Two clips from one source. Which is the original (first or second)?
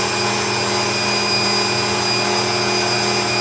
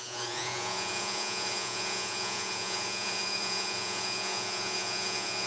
first